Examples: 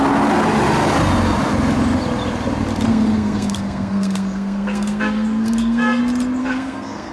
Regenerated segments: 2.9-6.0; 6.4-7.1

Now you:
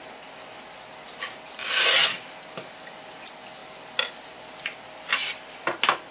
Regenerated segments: none

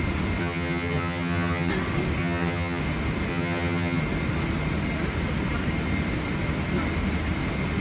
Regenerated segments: 0.4-1.7; 2.2-2.8; 3.3-4.0

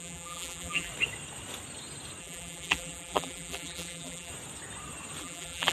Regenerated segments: 0.0-0.9; 2.2-4.3; 5.2-5.7

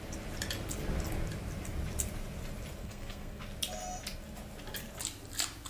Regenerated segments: 2.8-3.4

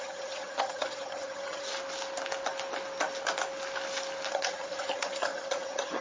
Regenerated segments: 0.0-1.7; 4.3-6.0

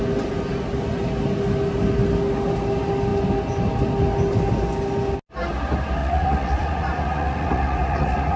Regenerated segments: 6.0-8.4

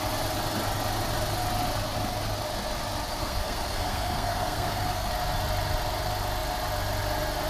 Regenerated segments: 3.2-5.1